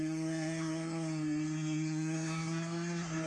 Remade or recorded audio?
remade